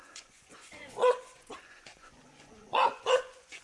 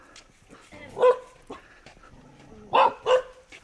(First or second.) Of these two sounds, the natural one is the second